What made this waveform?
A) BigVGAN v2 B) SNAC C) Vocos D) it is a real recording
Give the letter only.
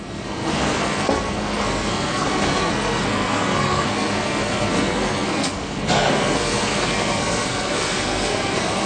B